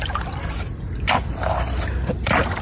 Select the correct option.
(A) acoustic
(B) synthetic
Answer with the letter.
A